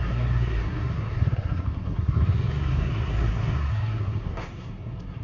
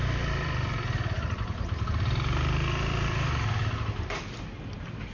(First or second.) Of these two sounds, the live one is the second